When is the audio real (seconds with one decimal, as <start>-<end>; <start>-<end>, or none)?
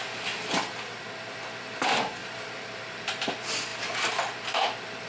0.0-2.2; 3.3-3.7